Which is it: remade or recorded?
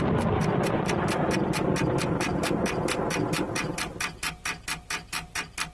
recorded